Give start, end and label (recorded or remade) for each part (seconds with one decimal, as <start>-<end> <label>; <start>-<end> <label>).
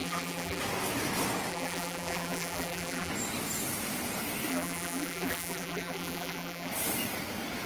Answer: 0.0-0.6 remade; 0.6-1.5 recorded; 1.5-3.1 remade; 3.1-4.5 recorded; 4.5-6.7 remade; 6.7-7.7 recorded